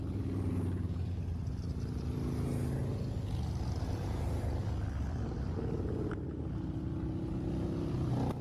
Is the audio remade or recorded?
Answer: recorded